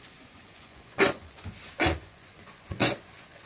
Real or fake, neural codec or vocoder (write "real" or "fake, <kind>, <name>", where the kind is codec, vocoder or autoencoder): fake, vocoder, Vocos